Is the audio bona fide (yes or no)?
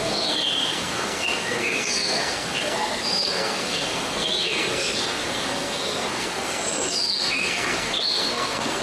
no